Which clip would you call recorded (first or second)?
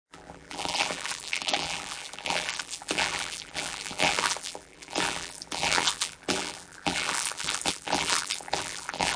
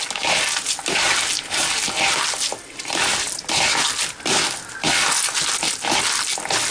second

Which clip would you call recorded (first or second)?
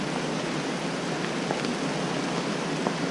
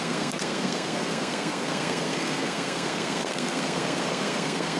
first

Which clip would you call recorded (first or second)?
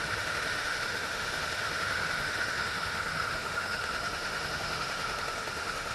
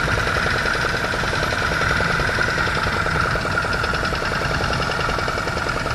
second